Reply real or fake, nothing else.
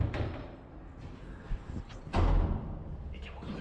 real